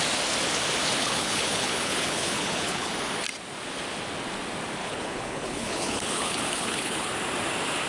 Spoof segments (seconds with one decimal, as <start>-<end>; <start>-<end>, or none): 1.0-2.9; 4.8-7.1

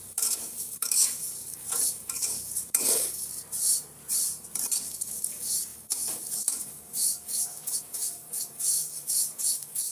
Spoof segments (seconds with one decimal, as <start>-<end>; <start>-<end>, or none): 0.0-3.3; 4.9-9.9

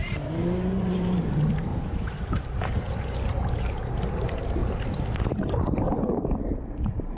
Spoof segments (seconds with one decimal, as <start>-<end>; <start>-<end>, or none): 0.0-4.6; 5.8-7.2

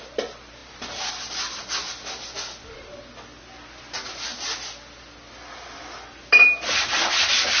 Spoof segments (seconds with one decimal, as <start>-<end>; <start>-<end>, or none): none

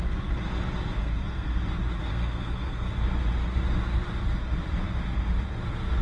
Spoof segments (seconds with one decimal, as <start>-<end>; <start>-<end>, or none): 1.0-1.6; 2.1-2.9